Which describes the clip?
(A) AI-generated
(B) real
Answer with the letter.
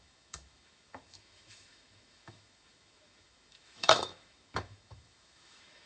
A